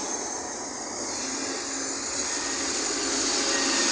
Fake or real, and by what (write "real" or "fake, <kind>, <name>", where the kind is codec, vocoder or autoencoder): real